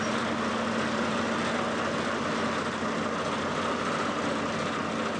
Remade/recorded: recorded